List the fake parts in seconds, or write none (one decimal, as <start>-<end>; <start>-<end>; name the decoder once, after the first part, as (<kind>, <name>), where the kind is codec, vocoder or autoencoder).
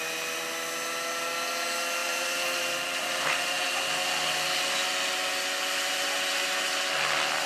2.0-4.0 (vocoder, BigVGAN v2)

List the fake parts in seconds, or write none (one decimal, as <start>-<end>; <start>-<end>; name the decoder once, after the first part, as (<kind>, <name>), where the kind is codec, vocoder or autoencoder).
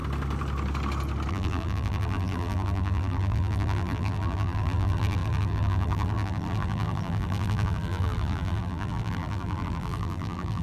1.3-10.6 (vocoder, BigVGAN v2)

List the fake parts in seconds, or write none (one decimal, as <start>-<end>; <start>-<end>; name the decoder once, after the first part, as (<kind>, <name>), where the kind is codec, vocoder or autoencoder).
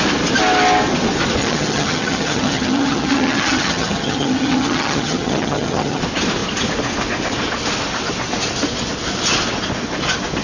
1.4-6.0 (vocoder, HiFi-GAN)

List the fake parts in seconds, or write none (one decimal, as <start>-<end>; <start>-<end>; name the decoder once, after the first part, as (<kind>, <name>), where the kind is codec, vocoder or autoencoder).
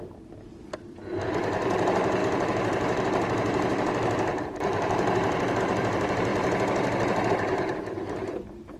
0.0-0.6 (vocoder, BigVGAN v2); 1.4-8.8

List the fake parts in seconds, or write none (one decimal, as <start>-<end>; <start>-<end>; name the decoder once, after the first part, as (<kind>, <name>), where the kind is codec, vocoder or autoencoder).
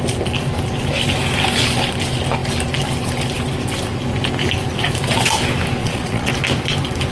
5.8-6.3 (vocoder, Vocos)